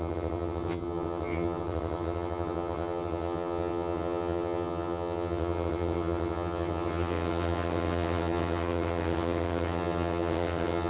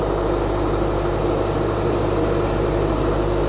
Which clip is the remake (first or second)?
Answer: first